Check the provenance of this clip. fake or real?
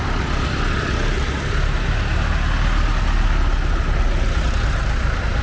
real